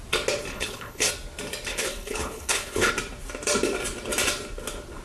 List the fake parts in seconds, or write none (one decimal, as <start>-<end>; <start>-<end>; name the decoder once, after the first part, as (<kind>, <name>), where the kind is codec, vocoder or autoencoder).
0.5-1.1 (codec, HILCodec); 1.7-2.9